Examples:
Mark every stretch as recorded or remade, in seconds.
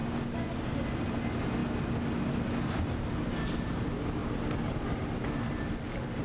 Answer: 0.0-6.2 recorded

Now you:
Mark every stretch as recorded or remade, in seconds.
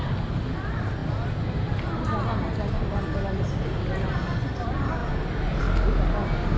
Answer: 0.0-6.6 recorded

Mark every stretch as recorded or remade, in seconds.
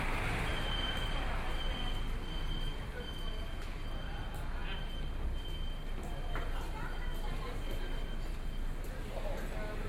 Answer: 0.0-0.5 recorded; 0.5-1.7 remade; 1.7-9.9 recorded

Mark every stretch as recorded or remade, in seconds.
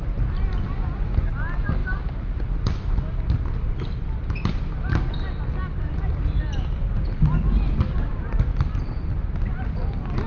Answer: 0.0-1.8 recorded; 1.8-2.9 remade; 2.9-8.5 recorded; 8.5-9.1 remade; 9.1-10.3 recorded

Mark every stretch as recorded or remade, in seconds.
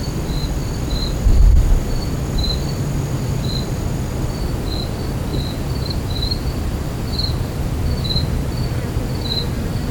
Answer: 0.0-5.3 recorded; 5.3-9.0 remade; 9.0-9.9 recorded